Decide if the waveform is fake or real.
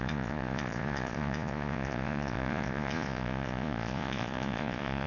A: fake